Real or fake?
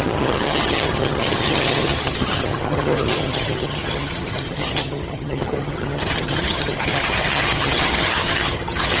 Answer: fake